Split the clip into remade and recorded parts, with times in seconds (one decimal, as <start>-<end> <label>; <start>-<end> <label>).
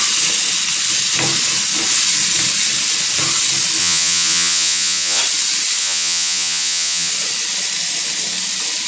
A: 0.0-3.8 recorded; 3.8-5.2 remade; 5.2-5.8 recorded; 5.8-7.1 remade; 7.1-8.9 recorded